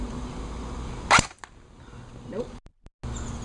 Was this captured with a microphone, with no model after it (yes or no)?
yes